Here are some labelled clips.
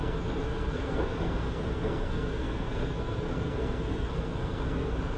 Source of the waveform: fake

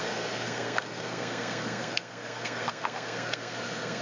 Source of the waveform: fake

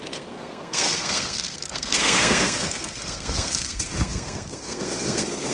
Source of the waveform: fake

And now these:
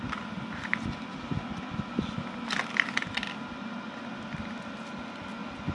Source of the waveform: real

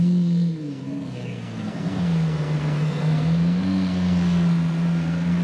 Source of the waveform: fake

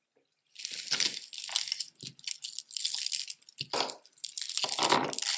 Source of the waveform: real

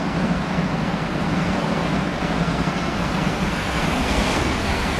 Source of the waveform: fake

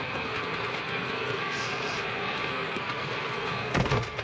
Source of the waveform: fake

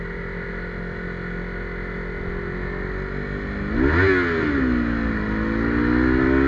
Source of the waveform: real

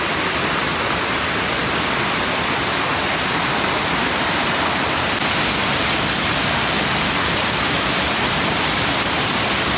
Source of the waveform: real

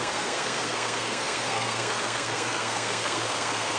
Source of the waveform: fake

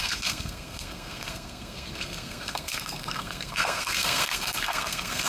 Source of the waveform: fake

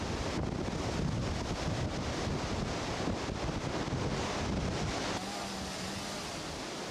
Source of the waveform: real